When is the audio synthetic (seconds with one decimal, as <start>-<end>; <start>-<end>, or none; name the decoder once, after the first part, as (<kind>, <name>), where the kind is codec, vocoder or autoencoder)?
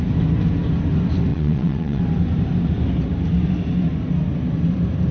1.3-2.0 (vocoder, WaveNeXt)